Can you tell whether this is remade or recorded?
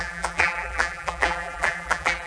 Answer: remade